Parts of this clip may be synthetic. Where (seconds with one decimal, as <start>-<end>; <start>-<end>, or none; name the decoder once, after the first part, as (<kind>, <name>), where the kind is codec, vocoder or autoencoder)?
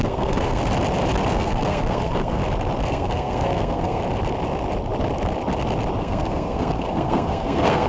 0.0-0.6 (codec, SNAC); 1.3-2.4; 2.9-4.0; 6.0-7.9